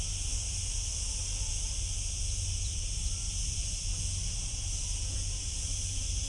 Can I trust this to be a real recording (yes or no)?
yes